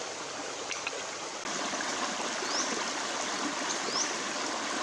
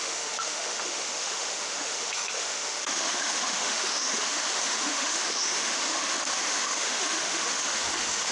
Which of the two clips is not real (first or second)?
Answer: second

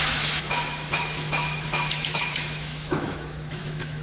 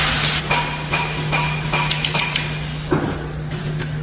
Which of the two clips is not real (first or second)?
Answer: first